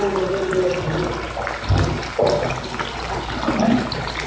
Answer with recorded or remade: recorded